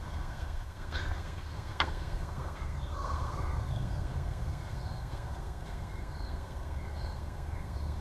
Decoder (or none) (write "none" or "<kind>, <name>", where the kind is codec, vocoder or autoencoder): codec, SNAC